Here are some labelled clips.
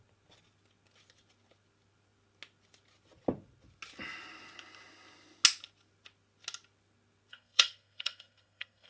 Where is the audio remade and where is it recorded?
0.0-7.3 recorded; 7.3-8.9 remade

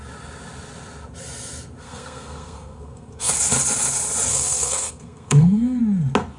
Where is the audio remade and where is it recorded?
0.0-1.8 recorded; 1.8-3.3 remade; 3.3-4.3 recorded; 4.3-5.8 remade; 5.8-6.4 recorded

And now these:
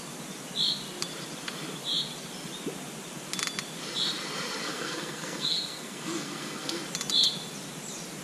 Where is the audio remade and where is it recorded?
0.0-4.6 recorded; 4.6-6.8 remade; 6.8-8.2 recorded

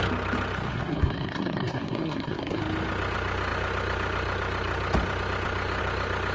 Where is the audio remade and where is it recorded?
0.0-0.7 recorded; 0.7-2.6 remade; 2.6-6.3 recorded

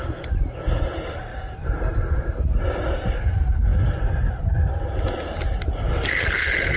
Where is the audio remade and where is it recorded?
0.0-6.8 recorded